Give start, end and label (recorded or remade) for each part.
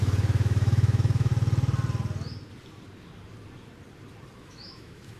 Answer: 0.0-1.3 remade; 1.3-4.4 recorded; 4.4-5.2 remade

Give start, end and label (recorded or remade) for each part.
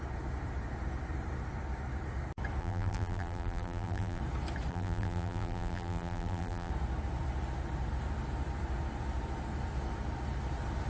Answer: 0.0-2.6 recorded; 2.6-4.2 remade; 4.2-4.7 recorded; 4.7-6.7 remade; 6.7-10.9 recorded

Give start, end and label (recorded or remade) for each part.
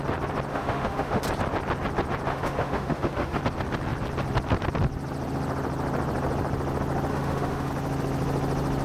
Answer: 0.0-0.5 recorded; 0.5-1.2 remade; 1.2-2.3 recorded; 2.3-3.4 remade; 3.4-7.1 recorded; 7.1-7.7 remade; 7.7-8.8 recorded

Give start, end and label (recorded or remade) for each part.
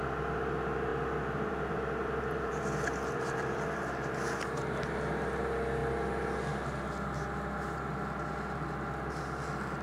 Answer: 0.0-0.9 recorded; 0.9-4.8 remade; 4.8-9.8 recorded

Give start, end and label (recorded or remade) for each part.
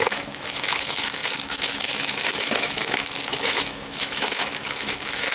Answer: 0.0-5.3 remade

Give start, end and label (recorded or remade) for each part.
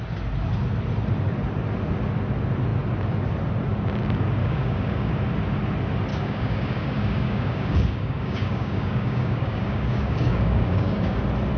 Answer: 0.0-4.4 recorded; 4.4-5.1 remade; 5.1-6.1 recorded; 6.1-11.2 remade; 11.2-11.6 recorded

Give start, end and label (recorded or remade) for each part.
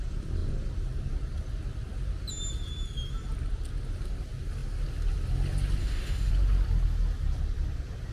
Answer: 0.0-5.8 recorded; 5.8-6.3 remade; 6.3-8.1 recorded